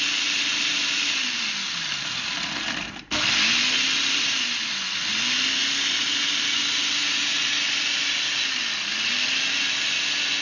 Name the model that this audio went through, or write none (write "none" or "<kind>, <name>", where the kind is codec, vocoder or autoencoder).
none